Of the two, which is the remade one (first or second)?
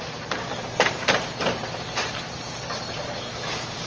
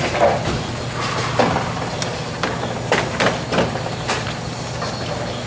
first